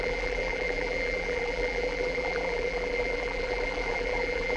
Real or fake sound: fake